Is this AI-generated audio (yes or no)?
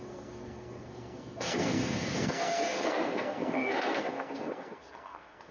yes